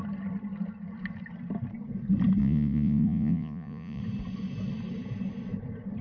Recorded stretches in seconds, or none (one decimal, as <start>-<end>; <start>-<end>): 0.0-2.4; 4.0-6.0